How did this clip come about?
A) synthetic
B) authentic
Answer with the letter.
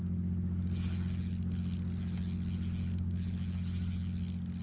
B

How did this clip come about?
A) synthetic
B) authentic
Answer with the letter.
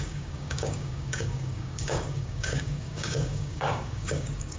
A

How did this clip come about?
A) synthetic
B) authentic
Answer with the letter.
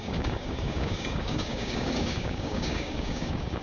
A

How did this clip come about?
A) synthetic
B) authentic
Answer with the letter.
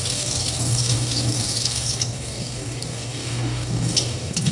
A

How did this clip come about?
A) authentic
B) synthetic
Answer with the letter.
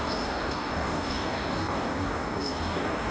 B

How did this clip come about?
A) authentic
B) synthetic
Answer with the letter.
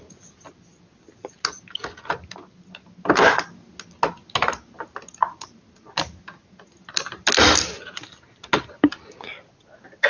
A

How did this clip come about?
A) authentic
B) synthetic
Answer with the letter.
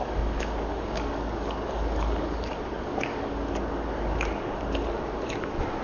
B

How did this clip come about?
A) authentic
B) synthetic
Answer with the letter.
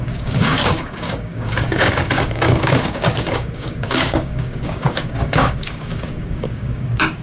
B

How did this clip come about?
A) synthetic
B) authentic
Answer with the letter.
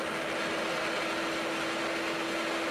B